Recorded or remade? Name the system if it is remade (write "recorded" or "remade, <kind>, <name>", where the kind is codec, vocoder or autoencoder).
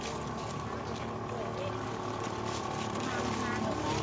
recorded